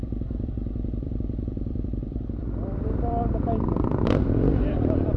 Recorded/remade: remade